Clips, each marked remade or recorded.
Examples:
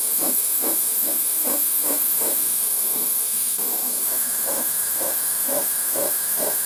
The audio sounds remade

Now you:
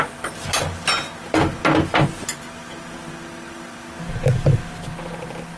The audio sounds recorded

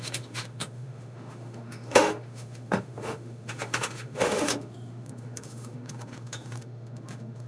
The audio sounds remade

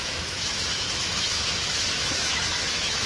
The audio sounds remade